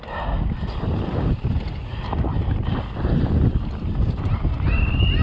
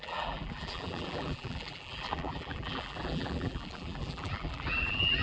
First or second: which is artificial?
second